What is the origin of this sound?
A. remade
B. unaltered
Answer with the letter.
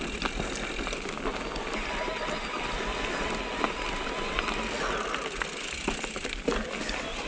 B